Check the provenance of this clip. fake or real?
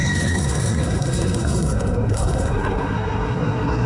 fake